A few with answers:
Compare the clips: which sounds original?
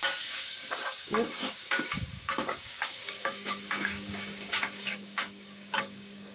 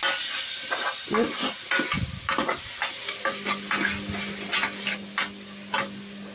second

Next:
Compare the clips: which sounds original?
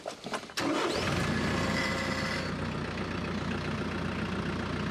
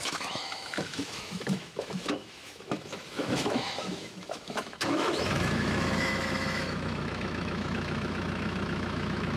first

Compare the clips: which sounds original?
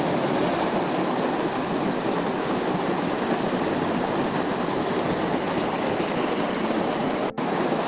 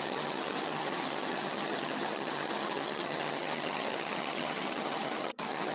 first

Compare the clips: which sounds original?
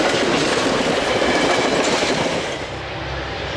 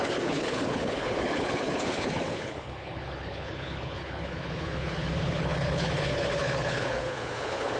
first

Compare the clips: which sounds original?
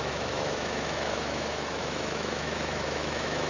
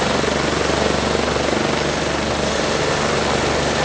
second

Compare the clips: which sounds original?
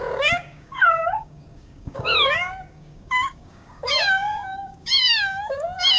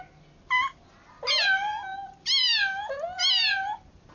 second